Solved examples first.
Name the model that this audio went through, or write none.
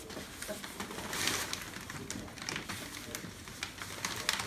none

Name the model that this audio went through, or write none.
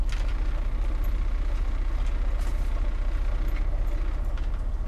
none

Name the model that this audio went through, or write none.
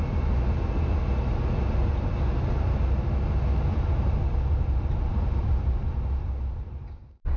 none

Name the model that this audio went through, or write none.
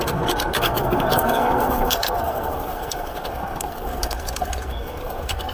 codec, SNAC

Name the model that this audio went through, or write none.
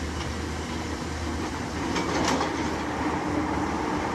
none